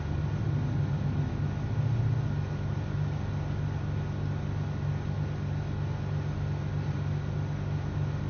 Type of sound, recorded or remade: recorded